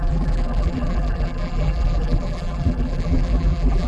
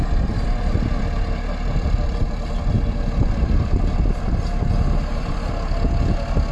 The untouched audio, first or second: second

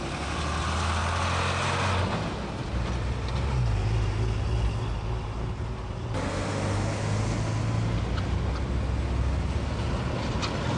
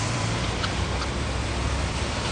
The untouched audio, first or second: first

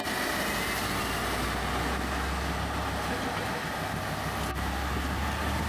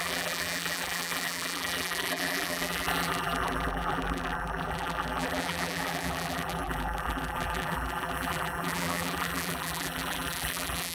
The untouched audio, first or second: first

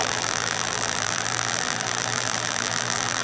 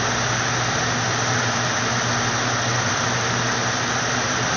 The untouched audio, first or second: second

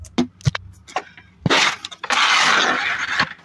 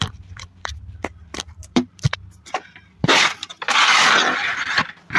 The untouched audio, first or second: first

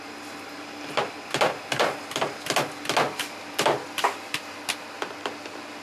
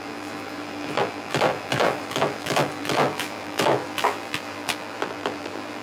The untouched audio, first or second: first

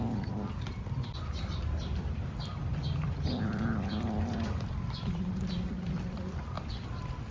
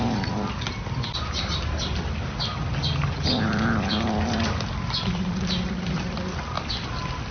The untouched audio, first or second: second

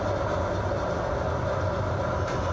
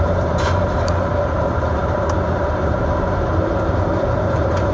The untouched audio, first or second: first